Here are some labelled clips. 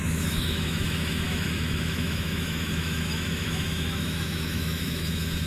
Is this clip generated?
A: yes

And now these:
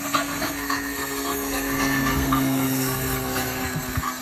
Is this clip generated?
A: yes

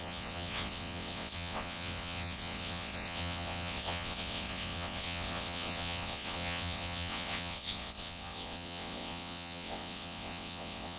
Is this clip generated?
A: yes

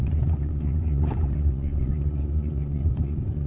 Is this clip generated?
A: yes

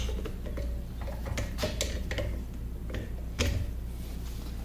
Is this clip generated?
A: no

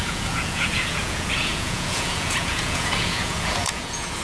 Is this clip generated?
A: yes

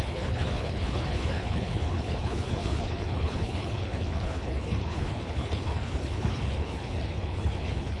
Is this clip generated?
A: yes